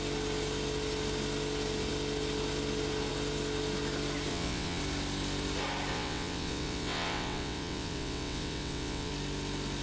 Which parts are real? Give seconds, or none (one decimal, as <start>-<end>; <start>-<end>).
0.0-4.3; 4.8-5.9; 9.1-9.8